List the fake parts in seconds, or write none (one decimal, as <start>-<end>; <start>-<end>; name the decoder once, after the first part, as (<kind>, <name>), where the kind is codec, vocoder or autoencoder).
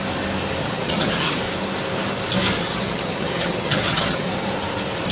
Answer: 0.6-1.4 (vocoder, HiFi-GAN); 2.6-4.3